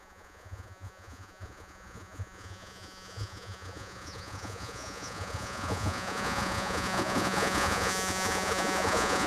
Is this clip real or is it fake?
fake